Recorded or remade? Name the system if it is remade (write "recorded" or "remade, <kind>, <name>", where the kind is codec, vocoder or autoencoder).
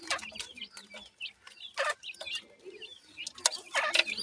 recorded